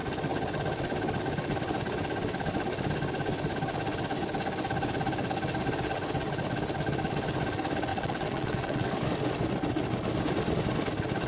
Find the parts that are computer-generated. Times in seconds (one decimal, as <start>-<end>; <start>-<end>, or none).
7.9-8.9

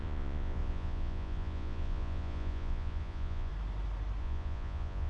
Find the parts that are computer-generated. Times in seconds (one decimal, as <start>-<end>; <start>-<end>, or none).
0.0-3.5; 4.2-5.1

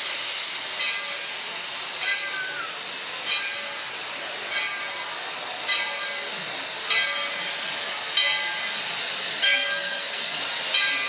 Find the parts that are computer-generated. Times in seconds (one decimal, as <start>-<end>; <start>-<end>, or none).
9.4-10.4

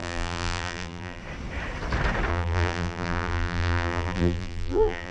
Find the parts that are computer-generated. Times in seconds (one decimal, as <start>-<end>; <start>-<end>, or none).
0.0-1.2; 2.3-5.1

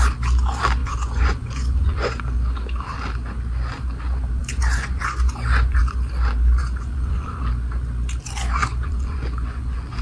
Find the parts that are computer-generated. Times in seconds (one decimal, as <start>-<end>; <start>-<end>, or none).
0.8-2.2; 4.4-5.8; 6.6-7.4; 8.6-10.0